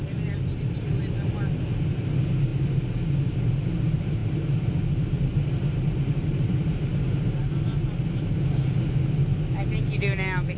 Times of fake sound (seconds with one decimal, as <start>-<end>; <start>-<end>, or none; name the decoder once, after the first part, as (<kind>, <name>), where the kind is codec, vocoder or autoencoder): 4.2-4.7 (vocoder, BigVGAN v2); 5.3-6.9